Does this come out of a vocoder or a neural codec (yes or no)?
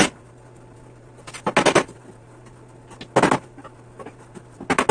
no